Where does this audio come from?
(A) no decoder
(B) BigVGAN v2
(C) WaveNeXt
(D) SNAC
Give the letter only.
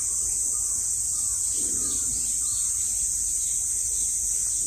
B